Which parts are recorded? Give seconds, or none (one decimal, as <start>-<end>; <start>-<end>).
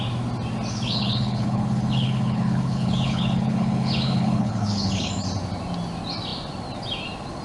0.0-0.7; 5.1-7.4